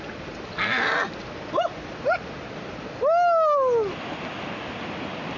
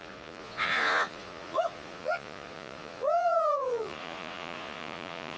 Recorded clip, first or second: first